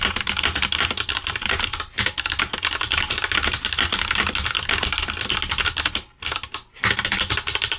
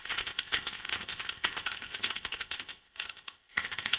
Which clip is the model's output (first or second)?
second